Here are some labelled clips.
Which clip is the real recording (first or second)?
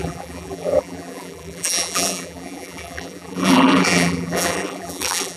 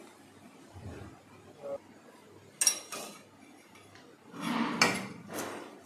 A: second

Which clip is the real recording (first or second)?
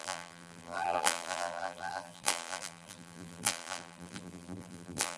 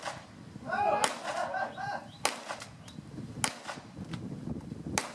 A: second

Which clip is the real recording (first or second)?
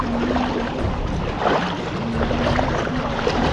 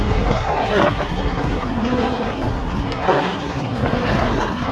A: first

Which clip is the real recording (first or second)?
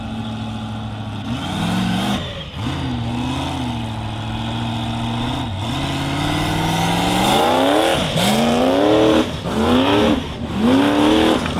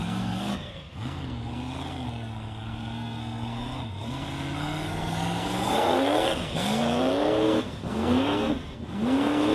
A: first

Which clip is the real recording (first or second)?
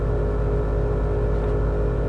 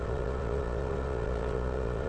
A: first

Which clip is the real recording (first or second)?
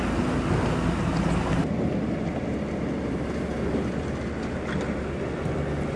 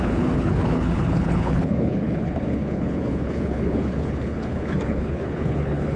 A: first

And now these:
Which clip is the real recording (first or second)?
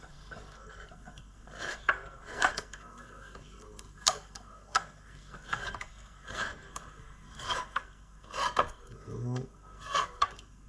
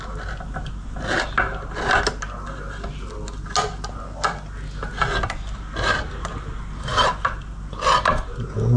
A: second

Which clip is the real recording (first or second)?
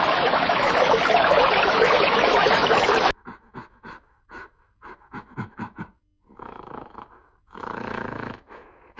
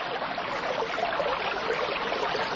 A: second